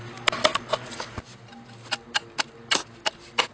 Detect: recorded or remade recorded